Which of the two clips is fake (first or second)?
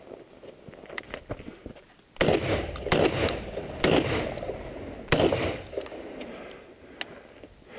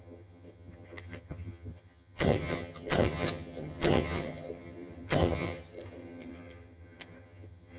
second